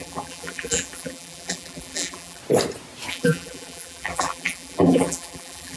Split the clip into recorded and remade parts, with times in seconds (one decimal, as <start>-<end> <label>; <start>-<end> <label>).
0.0-2.4 remade; 2.4-3.1 recorded; 3.1-5.8 remade

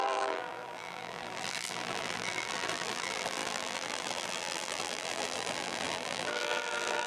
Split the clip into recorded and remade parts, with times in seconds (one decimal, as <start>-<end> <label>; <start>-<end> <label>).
0.0-7.1 remade